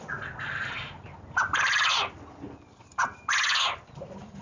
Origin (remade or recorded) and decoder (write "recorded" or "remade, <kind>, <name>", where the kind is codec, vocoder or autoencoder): recorded